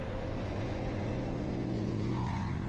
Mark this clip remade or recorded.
remade